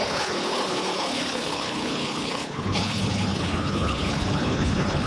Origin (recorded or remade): remade